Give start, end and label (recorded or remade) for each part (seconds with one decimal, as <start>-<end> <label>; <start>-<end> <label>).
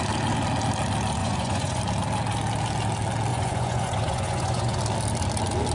0.0-1.2 recorded; 1.2-1.8 remade; 1.8-3.3 recorded; 3.3-4.8 remade; 4.8-5.7 recorded